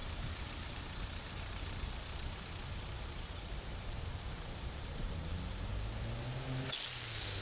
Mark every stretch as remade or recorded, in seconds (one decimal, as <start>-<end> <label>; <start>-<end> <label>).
0.0-5.7 remade; 5.7-7.4 recorded